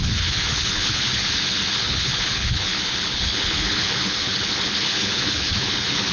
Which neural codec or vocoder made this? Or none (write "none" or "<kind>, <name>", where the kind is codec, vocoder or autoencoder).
codec, HILCodec